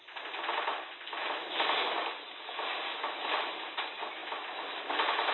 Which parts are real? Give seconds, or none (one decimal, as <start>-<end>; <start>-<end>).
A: 0.0-4.2; 4.8-5.3